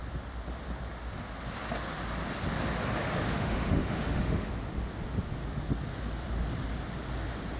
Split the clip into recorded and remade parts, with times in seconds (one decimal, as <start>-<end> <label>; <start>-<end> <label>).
0.0-3.2 recorded; 3.2-4.5 remade; 4.5-7.6 recorded